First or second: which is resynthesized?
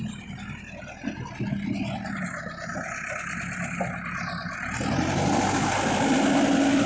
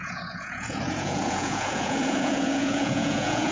second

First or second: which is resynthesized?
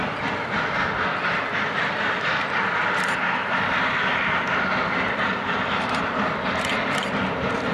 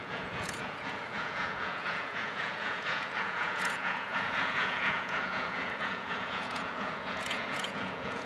second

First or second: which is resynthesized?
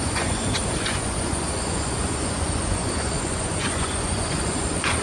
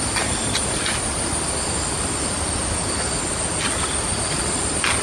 first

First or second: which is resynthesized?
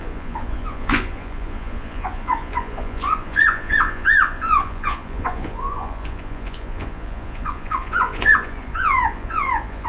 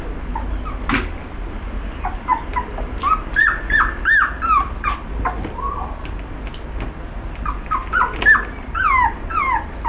first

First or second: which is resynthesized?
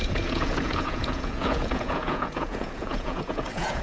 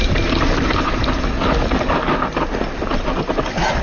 first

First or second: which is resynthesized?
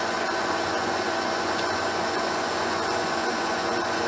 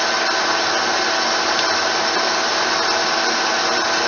first